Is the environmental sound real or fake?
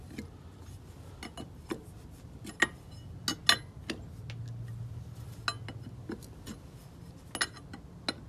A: real